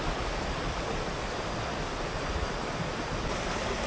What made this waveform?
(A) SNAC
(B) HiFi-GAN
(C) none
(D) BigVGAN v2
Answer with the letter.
C